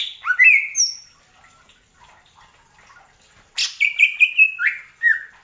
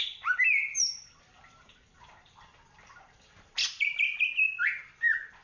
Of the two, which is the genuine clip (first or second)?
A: first